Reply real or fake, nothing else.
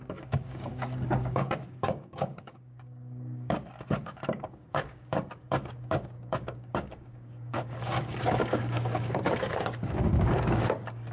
fake